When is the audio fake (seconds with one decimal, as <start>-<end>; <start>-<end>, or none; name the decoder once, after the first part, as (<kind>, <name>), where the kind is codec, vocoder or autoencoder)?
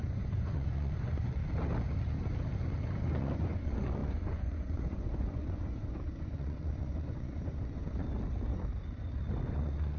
0.0-1.4 (vocoder, Vocos); 3.0-8.1; 9.5-10.0